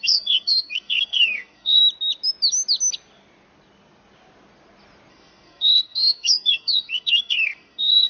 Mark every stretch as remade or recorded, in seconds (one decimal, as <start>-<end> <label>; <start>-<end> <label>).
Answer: 0.0-1.8 remade; 1.8-5.1 recorded; 5.1-8.1 remade

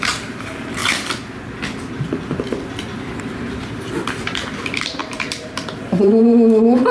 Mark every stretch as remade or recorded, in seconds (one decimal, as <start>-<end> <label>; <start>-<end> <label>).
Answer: 0.0-0.8 remade; 0.8-3.2 recorded; 3.2-6.9 remade

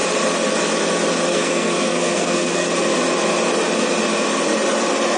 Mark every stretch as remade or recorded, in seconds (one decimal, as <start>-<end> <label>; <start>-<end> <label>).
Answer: 0.0-1.3 recorded; 1.3-2.7 remade; 2.7-5.2 recorded

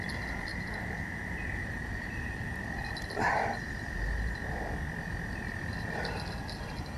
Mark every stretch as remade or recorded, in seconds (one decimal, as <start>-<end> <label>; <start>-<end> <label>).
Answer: 0.0-0.5 recorded; 0.5-2.8 remade; 2.8-7.0 recorded